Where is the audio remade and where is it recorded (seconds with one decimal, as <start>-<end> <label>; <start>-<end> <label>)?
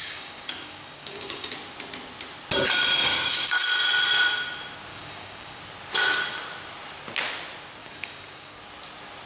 0.0-1.5 remade; 1.5-3.1 recorded; 3.1-3.6 remade; 3.6-4.9 recorded; 4.9-5.6 remade; 5.6-7.8 recorded; 7.8-8.6 remade; 8.6-9.3 recorded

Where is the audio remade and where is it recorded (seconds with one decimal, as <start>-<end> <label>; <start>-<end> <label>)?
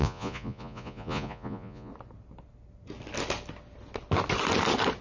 0.0-1.9 remade; 1.9-5.0 recorded